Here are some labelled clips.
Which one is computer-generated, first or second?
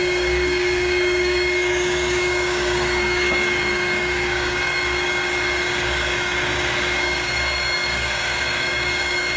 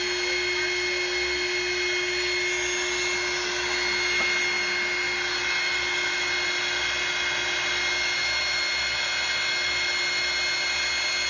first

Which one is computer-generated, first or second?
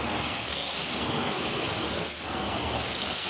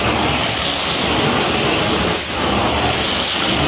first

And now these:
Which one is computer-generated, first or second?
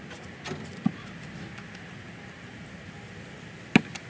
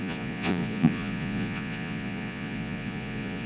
second